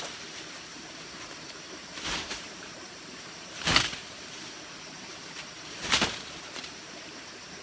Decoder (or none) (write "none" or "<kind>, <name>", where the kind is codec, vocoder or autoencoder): vocoder, BigVGAN v2